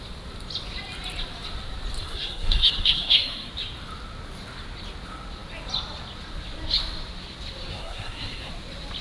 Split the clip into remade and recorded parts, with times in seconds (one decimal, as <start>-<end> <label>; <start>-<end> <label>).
0.0-2.0 recorded; 2.0-3.5 remade; 3.5-7.7 recorded; 7.7-8.5 remade; 8.5-9.0 recorded